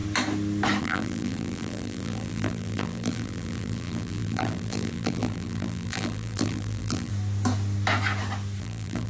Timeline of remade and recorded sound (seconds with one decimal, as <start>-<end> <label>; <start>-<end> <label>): 0.0-0.8 recorded; 0.8-7.1 remade; 7.1-8.6 recorded; 8.6-9.1 remade